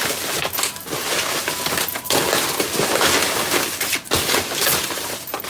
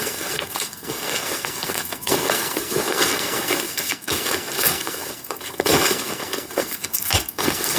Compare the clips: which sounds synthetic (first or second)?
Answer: second